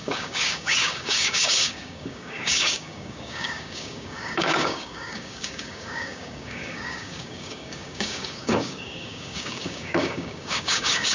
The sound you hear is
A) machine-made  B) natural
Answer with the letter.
A